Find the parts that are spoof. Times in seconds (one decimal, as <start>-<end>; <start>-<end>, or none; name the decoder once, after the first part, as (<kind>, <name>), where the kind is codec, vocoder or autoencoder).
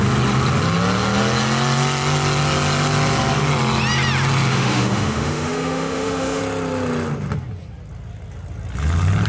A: 4.5-6.4 (autoencoder, DAC-VAE)